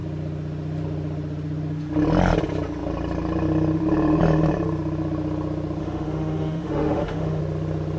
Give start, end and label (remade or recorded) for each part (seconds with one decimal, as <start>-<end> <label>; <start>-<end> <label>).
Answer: 0.0-5.8 recorded; 5.8-7.4 remade; 7.4-8.0 recorded